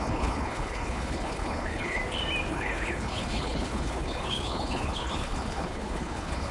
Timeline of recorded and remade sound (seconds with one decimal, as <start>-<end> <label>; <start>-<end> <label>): 0.0-2.0 remade; 2.0-2.5 recorded; 2.5-6.5 remade